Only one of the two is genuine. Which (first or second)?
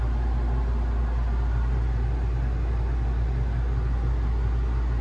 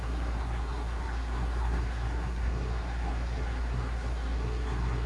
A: first